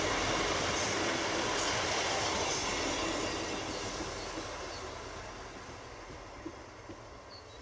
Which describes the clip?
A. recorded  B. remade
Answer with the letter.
A